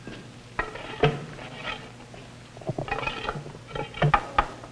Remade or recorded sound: recorded